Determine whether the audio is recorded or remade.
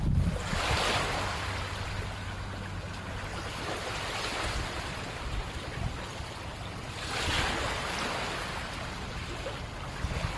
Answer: recorded